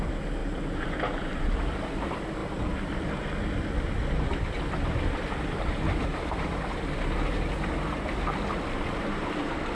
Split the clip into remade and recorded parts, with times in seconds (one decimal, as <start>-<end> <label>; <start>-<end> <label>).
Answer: 0.0-0.4 recorded; 0.4-1.3 remade; 1.3-2.4 recorded; 2.4-3.1 remade; 3.1-6.1 recorded; 6.1-8.3 remade; 8.3-9.7 recorded